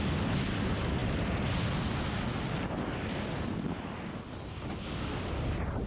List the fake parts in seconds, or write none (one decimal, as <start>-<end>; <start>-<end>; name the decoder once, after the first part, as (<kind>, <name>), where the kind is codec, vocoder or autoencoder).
none

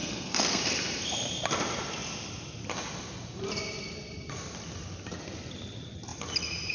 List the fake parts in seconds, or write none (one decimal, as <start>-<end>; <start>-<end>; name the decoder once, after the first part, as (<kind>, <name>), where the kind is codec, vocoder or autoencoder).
0.0-0.6 (codec, SNAC)